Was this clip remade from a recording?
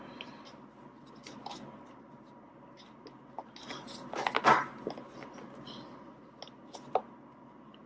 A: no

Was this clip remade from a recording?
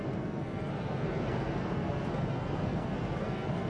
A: yes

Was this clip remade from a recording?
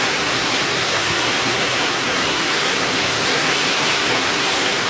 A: yes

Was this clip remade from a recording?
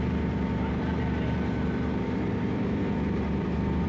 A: yes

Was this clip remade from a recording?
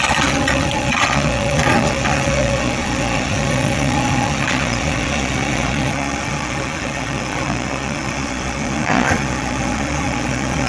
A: yes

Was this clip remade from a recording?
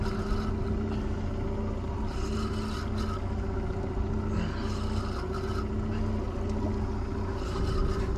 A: no